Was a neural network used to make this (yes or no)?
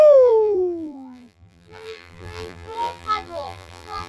yes